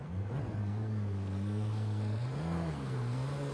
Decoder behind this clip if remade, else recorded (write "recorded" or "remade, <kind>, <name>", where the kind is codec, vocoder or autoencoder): remade, codec, SNAC